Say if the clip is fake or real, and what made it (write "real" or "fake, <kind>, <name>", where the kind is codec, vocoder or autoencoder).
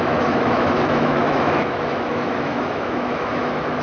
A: fake, autoencoder, DAC-VAE